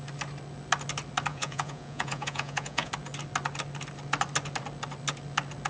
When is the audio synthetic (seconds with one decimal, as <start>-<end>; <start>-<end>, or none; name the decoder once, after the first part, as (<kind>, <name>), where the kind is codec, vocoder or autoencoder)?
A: 1.3-2.9 (vocoder, Vocos)